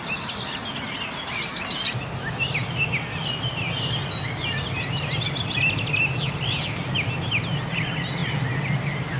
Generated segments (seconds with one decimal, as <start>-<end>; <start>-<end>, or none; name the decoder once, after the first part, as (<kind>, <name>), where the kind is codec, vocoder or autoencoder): none